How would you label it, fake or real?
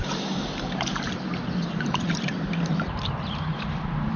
fake